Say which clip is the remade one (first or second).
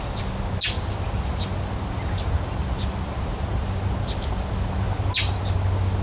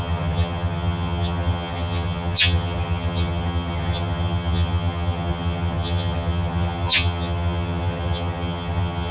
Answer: second